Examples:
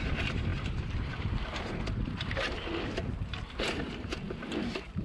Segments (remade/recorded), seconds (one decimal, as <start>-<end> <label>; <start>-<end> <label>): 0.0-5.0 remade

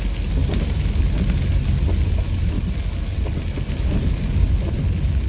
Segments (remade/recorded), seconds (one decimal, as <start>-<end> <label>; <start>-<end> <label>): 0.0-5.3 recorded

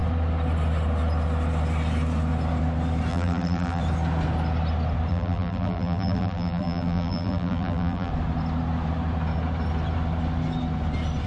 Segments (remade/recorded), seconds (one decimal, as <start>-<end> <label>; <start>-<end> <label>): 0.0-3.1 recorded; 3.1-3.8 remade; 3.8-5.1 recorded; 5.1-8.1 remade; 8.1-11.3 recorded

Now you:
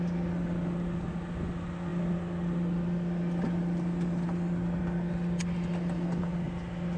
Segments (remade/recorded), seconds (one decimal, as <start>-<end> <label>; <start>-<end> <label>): 0.0-7.0 recorded

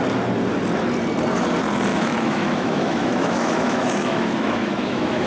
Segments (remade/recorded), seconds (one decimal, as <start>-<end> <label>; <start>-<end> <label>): 0.0-1.9 recorded; 1.9-5.3 remade

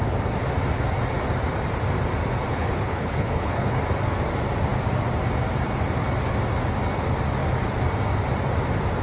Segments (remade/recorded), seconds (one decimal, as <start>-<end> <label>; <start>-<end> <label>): 0.0-2.5 recorded; 2.5-3.8 remade; 3.8-9.0 recorded

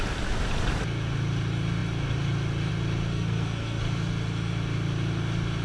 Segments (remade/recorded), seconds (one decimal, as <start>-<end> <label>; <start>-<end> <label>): 0.0-3.1 recorded; 3.1-3.8 remade; 3.8-5.6 recorded